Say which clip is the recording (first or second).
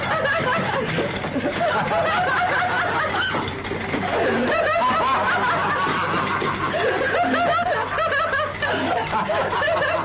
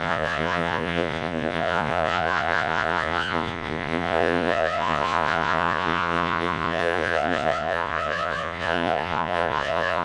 first